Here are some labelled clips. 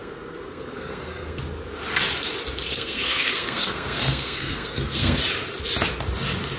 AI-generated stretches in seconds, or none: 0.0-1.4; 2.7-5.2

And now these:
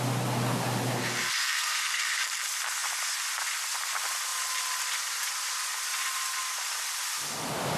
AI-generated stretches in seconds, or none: 1.4-2.2

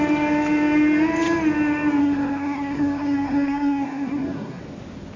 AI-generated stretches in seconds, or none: 2.0-4.6

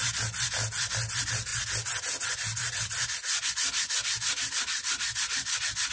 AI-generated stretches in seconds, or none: none